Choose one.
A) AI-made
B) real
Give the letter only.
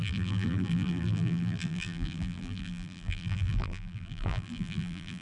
A